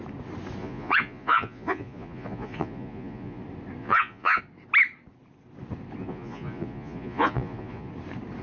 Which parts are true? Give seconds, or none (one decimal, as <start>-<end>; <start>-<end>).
0.0-0.6; 3.4-3.8; 4.4-6.0; 7.9-8.4